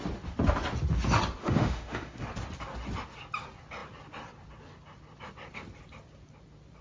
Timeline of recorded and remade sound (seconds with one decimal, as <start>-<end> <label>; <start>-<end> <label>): 0.0-1.4 recorded; 1.4-2.2 remade; 2.2-6.8 recorded